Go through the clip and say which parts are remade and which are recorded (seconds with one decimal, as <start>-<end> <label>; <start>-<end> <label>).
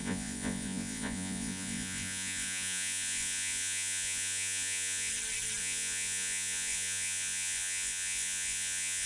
0.0-5.1 remade; 5.1-5.6 recorded; 5.6-9.1 remade